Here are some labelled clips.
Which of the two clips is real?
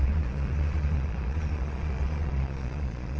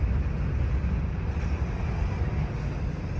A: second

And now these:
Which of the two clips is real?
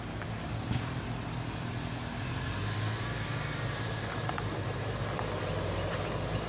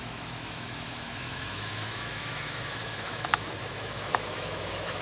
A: first